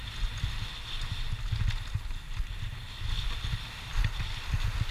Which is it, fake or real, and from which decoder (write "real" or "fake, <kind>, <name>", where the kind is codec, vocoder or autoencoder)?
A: real